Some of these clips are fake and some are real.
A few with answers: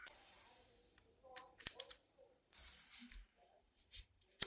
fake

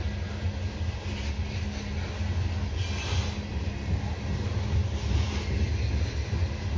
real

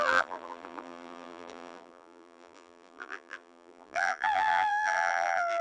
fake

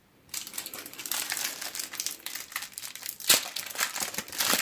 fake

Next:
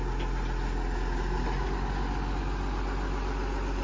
real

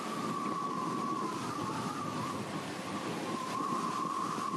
real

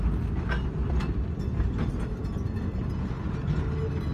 real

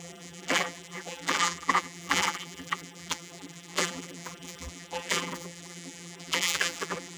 fake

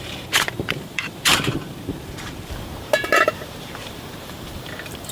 fake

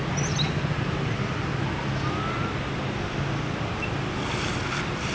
real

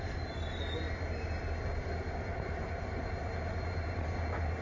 real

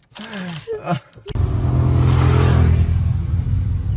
real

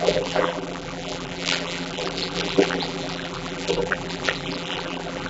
fake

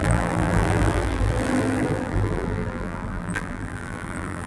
fake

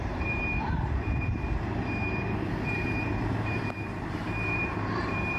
fake